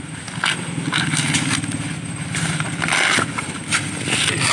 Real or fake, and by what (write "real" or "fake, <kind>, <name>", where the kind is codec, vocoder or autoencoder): real